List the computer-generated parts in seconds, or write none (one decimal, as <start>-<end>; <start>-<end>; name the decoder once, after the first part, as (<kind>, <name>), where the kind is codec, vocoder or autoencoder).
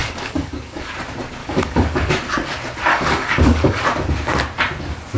0.0-0.9 (codec, DAC); 1.4-2.1; 2.9-3.8